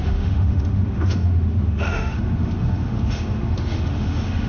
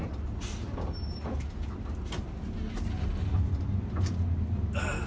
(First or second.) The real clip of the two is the second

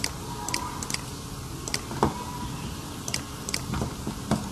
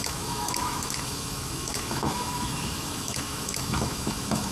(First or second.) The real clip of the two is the first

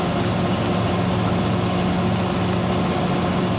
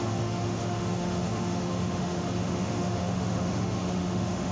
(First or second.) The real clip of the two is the first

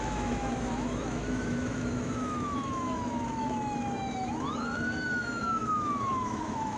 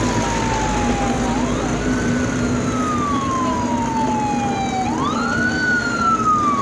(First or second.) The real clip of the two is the second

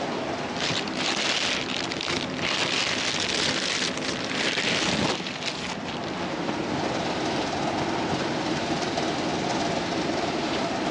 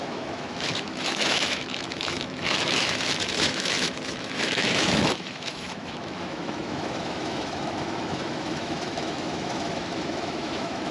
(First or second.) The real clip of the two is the first